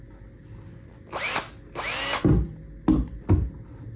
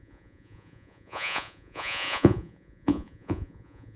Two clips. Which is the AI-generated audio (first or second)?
second